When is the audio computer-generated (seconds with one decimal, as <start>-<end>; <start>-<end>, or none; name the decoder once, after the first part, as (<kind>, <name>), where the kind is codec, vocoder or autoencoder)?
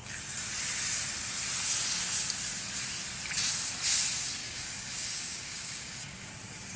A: 4.4-6.3 (codec, DAC)